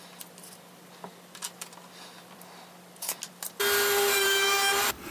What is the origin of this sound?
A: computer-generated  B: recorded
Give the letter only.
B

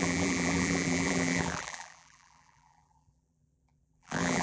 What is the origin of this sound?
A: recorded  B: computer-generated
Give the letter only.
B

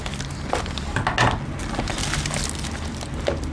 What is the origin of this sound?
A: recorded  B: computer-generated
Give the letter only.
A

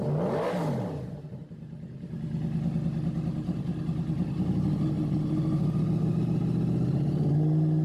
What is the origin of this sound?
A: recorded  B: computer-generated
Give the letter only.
A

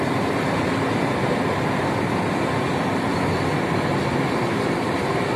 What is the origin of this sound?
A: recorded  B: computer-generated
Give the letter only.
B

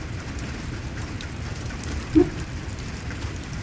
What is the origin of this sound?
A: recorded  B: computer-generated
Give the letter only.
B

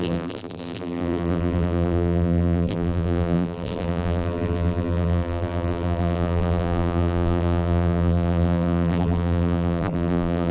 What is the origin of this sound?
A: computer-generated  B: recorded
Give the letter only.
A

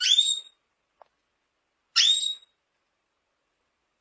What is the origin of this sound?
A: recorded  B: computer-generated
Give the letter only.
A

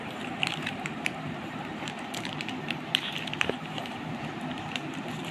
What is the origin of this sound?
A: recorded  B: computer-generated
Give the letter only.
B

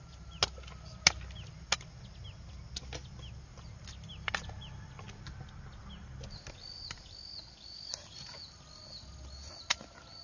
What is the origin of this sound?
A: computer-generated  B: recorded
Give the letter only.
B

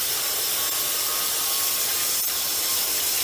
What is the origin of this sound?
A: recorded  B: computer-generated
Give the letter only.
A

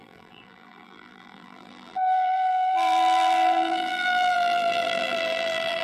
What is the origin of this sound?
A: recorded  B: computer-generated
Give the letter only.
B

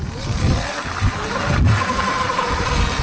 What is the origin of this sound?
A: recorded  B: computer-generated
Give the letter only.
B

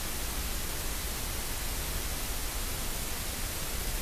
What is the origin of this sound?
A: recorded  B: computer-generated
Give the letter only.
A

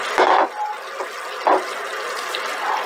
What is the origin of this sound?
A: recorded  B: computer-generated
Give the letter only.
A